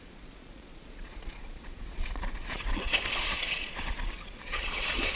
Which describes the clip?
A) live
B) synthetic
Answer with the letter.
B